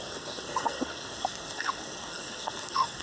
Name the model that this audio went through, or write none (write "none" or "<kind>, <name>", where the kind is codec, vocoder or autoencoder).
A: codec, SNAC